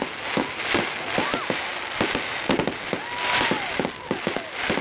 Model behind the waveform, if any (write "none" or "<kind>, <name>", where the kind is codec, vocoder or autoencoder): none